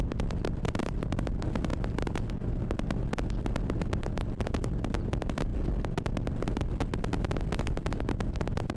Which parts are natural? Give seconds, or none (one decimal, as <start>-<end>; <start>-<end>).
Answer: 0.0-8.8

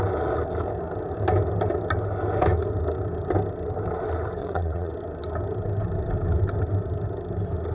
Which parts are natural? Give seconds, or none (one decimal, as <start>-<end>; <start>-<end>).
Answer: 0.0-4.4; 4.9-7.7

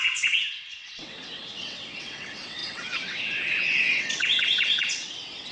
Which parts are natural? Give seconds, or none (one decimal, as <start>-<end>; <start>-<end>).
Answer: none

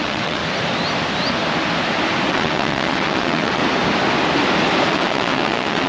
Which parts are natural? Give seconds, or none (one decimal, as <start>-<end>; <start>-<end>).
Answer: 0.4-2.3; 3.6-4.9

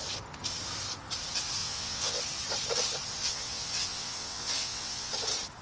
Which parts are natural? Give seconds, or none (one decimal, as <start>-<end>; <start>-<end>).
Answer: 0.0-1.6; 2.2-3.2; 5.1-5.6

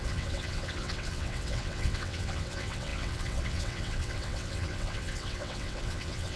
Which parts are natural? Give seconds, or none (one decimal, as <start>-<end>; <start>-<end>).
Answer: none

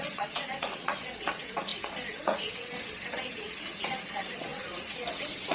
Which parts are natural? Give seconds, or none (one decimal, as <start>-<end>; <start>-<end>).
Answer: none

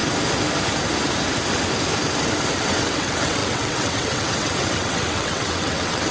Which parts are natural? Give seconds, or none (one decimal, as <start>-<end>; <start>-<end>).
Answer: 0.0-2.6